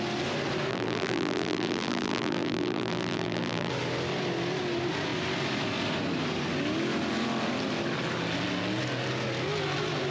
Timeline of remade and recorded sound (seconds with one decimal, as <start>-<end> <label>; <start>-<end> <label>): 0.0-0.7 recorded; 0.7-3.7 remade; 3.7-10.1 recorded